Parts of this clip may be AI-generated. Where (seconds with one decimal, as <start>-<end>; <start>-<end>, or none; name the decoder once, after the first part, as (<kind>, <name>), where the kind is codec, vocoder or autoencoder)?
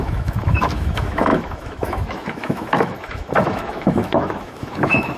0.0-5.2 (autoencoder, DAC-VAE)